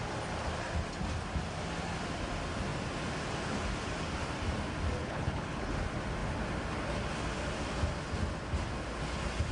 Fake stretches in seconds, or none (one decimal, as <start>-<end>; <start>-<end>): 5.0-5.7